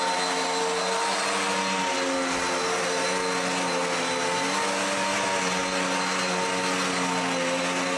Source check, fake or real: real